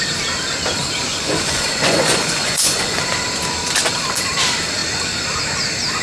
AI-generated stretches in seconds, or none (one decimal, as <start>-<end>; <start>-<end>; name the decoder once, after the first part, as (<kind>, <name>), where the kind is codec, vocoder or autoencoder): 1.1-3.0 (vocoder, Vocos)